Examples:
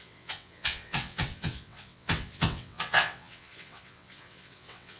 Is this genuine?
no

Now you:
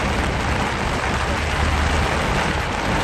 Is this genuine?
yes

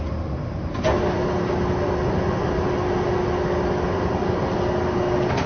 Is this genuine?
yes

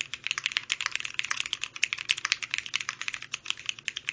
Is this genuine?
yes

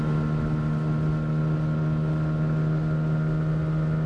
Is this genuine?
yes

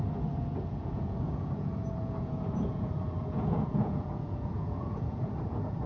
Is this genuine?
no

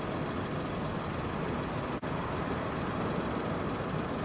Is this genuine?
yes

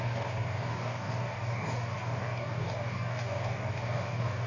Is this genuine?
no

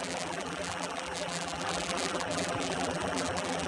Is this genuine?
no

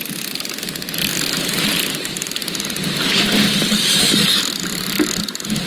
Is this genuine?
yes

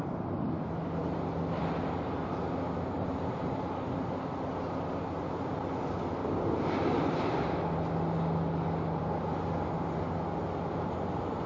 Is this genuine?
yes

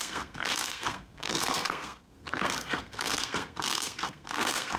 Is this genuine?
no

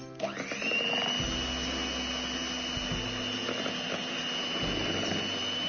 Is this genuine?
yes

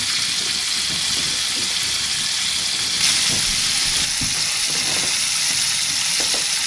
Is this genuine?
yes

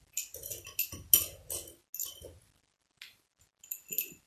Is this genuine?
yes